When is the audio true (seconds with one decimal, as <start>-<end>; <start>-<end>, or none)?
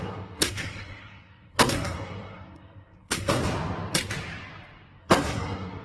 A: 3.4-5.0